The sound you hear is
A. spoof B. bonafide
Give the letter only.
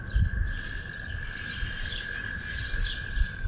A